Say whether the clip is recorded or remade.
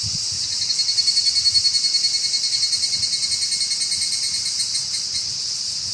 recorded